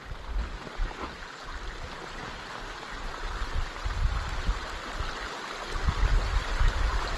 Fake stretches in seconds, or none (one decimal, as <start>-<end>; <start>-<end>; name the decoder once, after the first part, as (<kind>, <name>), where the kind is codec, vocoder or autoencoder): none